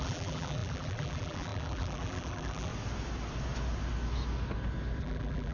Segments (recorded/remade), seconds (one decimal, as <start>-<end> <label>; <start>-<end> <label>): 0.0-2.7 remade; 2.7-5.0 recorded; 5.0-5.5 remade